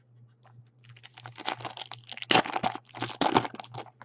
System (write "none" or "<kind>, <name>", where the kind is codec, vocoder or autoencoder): none